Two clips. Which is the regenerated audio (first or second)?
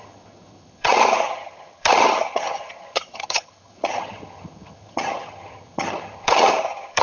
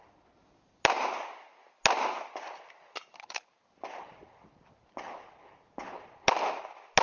first